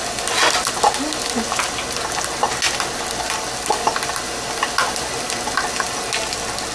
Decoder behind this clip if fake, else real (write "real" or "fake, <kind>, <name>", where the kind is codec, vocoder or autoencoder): real